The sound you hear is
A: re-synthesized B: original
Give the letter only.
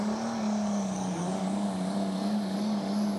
A